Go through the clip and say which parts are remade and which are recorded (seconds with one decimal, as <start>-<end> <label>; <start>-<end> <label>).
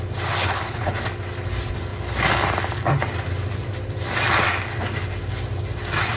0.0-0.4 recorded; 0.4-0.9 remade; 0.9-6.2 recorded